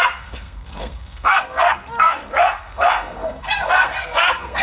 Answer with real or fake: fake